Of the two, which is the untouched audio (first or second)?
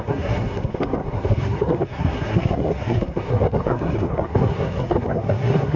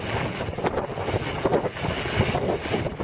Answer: second